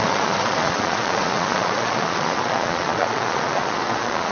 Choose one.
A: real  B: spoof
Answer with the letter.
B